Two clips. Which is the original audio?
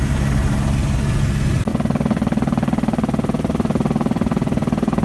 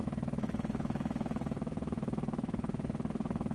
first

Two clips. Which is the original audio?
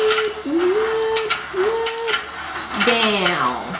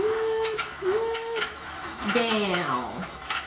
first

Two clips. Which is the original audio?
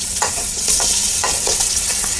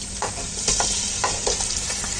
second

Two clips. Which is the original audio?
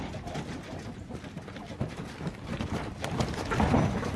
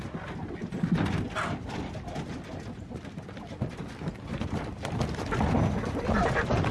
second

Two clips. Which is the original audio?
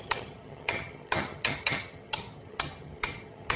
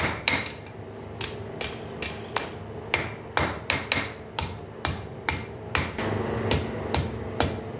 second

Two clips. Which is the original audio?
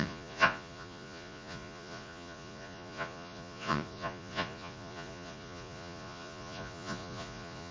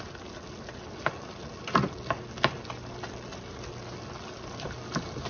second